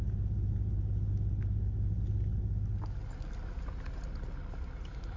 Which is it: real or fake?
real